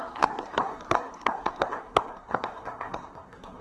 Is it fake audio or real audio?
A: fake